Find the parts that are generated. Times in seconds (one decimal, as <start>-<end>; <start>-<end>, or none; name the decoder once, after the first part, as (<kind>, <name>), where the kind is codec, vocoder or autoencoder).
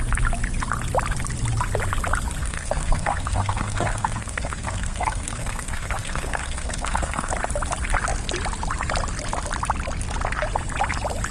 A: 2.4-7.3 (codec, SNAC)